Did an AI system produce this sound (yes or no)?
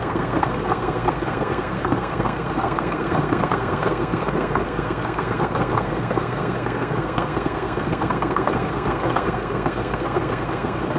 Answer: yes